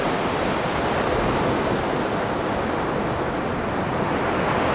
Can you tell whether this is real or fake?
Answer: real